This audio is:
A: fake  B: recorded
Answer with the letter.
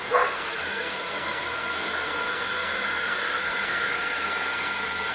A